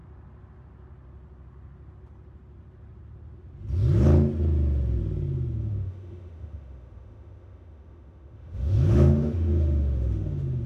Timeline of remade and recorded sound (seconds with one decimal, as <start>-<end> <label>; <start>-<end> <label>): 0.0-5.6 recorded; 5.6-10.7 remade